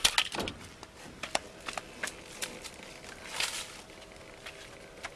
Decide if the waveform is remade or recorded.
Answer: recorded